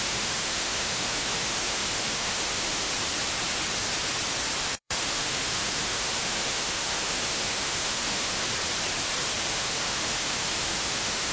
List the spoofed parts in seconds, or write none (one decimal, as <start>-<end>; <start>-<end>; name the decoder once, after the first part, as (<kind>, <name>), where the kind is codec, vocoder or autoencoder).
0.0-2.9 (autoencoder, DAC-VAE); 4.7-8.5; 9.5-11.3